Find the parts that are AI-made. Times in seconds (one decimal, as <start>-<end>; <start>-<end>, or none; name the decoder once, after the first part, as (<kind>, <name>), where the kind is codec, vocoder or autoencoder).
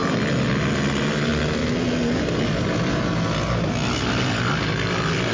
none